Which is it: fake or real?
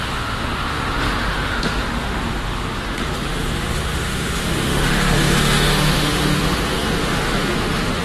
fake